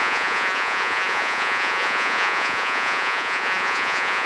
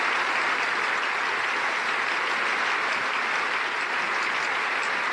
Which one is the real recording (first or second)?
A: second